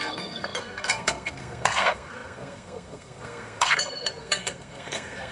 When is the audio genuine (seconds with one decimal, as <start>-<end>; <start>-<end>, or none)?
none